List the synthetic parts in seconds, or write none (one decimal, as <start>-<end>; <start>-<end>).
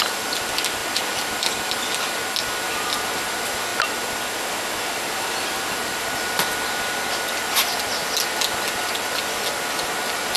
none